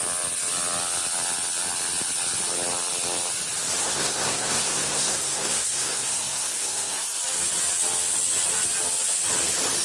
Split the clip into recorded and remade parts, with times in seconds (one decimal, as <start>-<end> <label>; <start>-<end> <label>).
0.0-3.8 recorded; 3.8-7.2 remade; 7.2-9.8 recorded